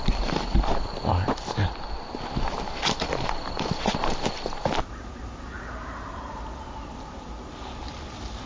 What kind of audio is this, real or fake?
real